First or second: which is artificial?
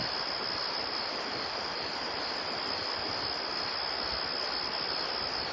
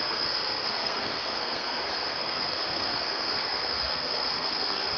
second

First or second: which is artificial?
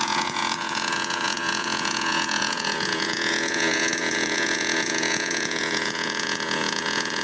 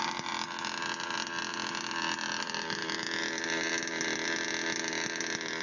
first